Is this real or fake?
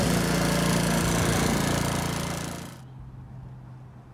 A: real